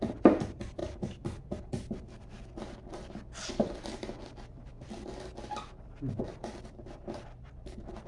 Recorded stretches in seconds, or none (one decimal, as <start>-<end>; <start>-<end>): 0.8-3.5; 4.7-6.2